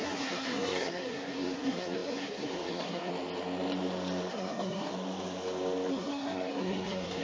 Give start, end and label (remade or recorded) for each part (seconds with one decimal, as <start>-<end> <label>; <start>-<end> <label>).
0.0-3.1 remade; 3.1-4.3 recorded; 4.3-4.9 remade; 4.9-5.9 recorded; 5.9-7.2 remade